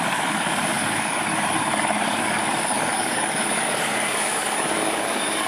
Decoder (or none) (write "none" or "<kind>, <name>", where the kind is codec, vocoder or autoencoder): codec, DAC